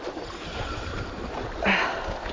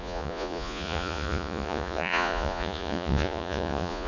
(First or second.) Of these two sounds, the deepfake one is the second